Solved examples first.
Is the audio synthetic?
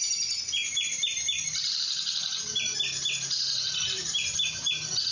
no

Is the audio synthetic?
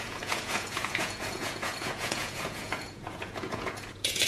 yes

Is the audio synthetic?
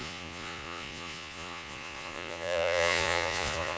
yes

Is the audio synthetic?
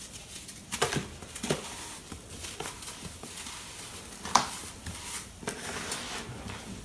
no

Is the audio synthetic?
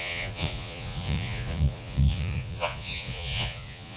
yes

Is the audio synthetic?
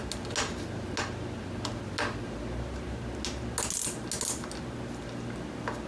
no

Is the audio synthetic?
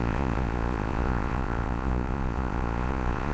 yes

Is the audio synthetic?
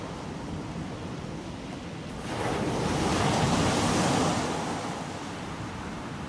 no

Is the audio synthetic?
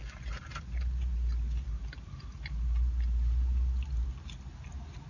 no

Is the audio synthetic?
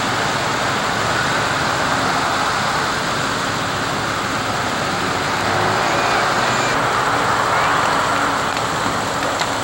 no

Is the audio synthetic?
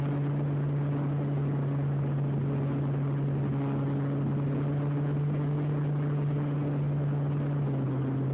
no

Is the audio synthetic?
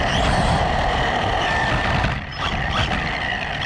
no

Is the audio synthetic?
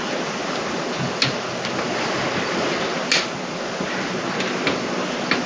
no